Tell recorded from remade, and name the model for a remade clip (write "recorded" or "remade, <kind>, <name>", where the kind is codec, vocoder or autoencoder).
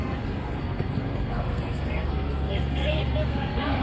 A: remade, codec, SNAC